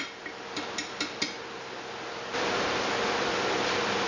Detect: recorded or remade recorded